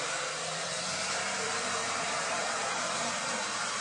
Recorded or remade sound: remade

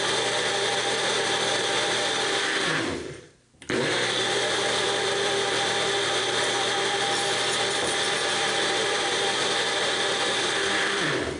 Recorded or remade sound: remade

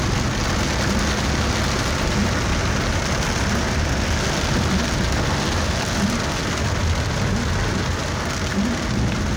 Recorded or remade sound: recorded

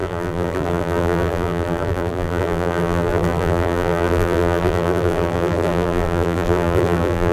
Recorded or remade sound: remade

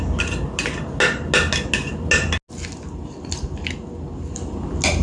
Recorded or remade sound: recorded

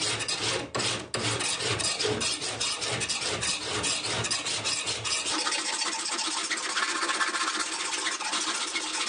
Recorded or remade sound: recorded